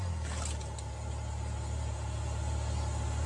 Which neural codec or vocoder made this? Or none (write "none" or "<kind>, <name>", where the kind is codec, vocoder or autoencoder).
none